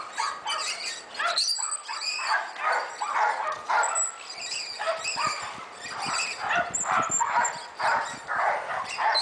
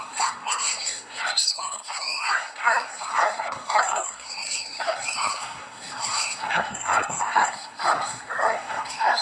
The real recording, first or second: first